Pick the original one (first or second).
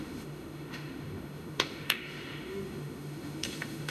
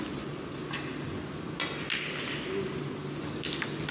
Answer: second